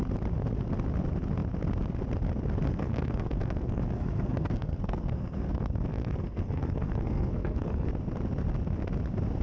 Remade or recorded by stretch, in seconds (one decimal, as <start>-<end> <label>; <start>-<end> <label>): 0.0-2.7 recorded; 2.7-7.9 remade; 7.9-9.4 recorded